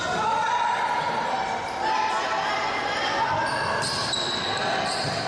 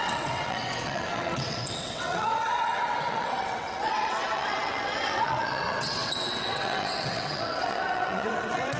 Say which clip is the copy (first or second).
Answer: second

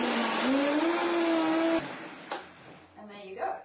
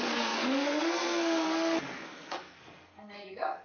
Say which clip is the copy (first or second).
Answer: second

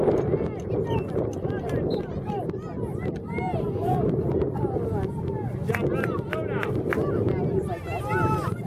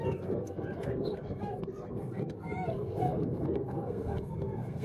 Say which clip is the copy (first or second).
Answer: second